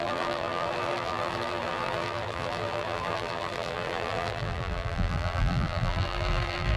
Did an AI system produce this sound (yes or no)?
yes